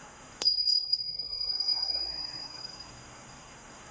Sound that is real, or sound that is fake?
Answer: fake